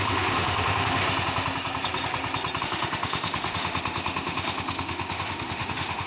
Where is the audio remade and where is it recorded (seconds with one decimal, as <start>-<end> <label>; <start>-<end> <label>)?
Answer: 0.0-1.0 remade; 1.0-2.6 recorded; 2.6-6.1 remade